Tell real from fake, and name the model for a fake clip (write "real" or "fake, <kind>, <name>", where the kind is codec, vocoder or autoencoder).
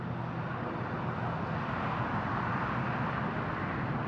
real